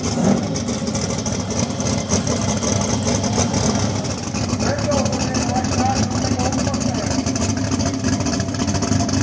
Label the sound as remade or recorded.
recorded